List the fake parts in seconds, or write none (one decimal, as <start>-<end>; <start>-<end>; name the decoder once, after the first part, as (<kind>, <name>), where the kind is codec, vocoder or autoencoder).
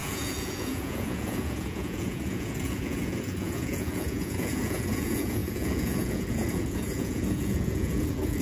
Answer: 0.0-8.4 (vocoder, Vocos)